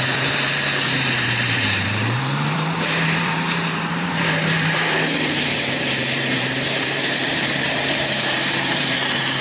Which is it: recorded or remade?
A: remade